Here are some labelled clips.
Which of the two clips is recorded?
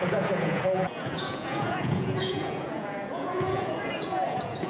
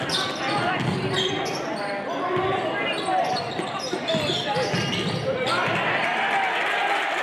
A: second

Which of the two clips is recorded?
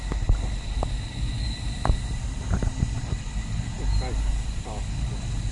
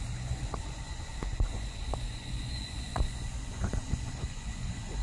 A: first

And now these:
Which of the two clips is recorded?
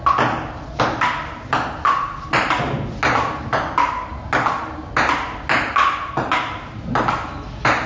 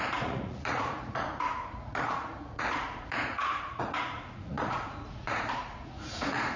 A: first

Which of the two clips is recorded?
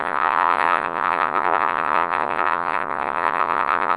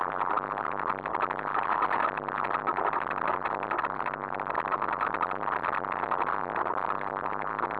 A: second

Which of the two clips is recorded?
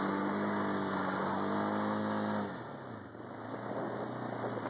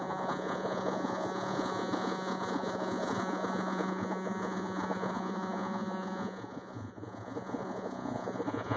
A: first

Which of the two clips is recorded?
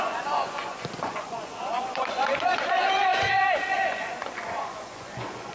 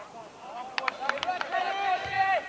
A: second